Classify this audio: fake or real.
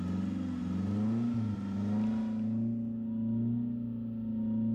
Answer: real